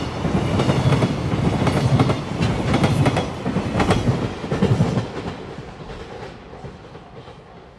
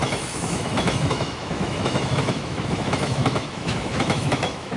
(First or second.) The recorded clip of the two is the first